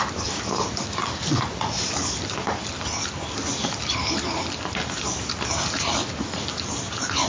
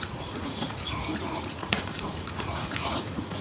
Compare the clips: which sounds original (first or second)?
first